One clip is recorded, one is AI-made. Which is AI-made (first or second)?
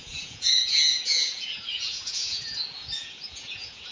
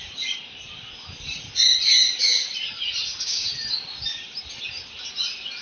first